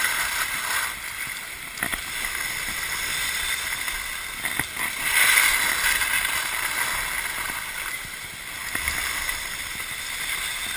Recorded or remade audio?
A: recorded